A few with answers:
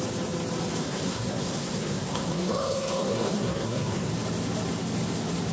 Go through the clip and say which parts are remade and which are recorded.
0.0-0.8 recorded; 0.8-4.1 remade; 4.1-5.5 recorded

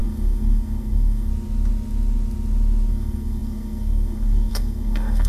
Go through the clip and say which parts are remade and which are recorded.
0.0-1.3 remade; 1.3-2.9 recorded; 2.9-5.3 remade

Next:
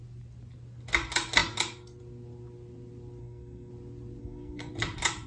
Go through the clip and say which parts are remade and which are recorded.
0.0-3.2 recorded; 3.2-3.7 remade; 3.7-4.2 recorded; 4.2-4.7 remade; 4.7-5.3 recorded